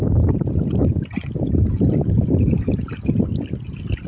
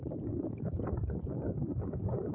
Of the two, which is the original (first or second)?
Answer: first